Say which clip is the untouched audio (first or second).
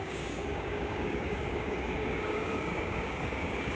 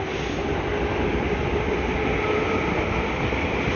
second